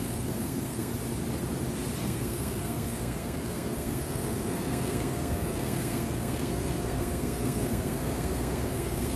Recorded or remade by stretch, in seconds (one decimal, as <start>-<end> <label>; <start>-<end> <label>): 0.0-0.9 remade; 0.9-2.0 recorded; 2.0-9.2 remade